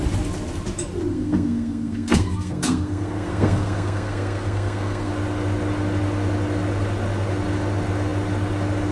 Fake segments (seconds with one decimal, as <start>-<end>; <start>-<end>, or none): 1.1-5.1